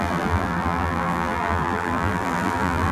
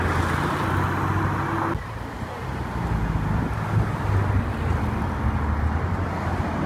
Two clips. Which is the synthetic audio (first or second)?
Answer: first